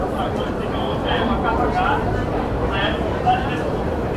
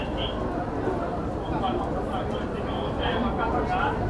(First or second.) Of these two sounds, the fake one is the first